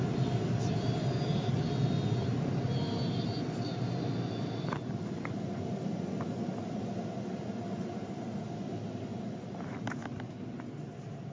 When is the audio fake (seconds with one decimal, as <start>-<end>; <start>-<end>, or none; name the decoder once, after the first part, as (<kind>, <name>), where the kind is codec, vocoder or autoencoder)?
none